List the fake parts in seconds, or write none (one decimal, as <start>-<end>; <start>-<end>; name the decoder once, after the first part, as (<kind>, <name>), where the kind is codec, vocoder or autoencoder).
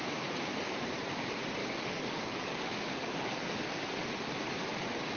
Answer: 1.6-3.6 (codec, DAC)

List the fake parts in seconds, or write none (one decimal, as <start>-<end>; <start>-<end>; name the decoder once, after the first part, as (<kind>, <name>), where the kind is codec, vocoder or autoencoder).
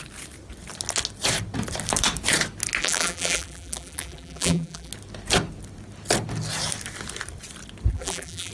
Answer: 2.8-4.9 (vocoder, BigVGAN v2); 7.9-8.5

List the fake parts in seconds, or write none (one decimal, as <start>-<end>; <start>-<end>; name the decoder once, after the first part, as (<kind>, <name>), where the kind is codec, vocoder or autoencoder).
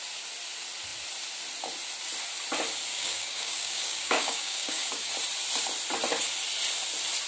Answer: 2.9-5.1 (codec, DAC)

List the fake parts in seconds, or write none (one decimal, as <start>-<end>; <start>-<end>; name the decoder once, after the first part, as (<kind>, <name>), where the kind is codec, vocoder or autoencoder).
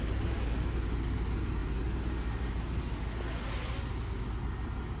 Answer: none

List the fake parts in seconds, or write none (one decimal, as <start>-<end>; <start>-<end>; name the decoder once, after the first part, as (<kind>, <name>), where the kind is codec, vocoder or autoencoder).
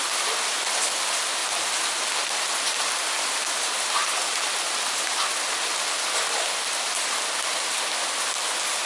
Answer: none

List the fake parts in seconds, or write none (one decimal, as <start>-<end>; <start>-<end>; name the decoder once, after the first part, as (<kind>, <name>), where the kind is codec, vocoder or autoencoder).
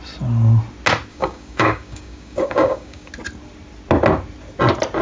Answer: 1.1-3.1 (codec, DAC)